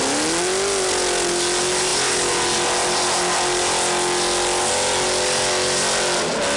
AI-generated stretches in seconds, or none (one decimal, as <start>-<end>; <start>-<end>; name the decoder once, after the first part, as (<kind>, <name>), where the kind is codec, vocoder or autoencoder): none